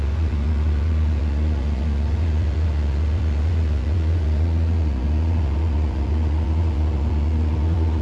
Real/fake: fake